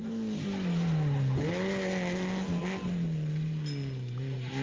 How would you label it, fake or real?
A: real